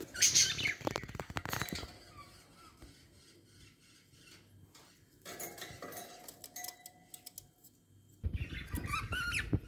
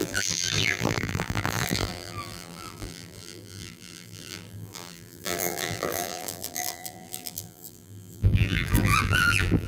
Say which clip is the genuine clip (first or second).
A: first